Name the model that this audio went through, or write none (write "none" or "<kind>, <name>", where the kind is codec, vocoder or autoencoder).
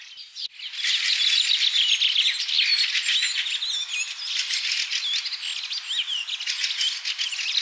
none